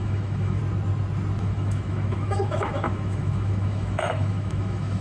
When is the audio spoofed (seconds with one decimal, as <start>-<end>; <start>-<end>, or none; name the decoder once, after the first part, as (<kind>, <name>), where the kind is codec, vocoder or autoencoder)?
0.0-0.6 (autoencoder, DAC-VAE); 1.4-5.0